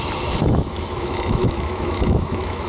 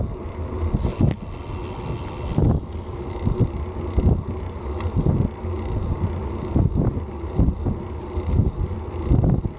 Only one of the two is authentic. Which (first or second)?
second